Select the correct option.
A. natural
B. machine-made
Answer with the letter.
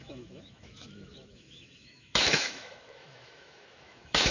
B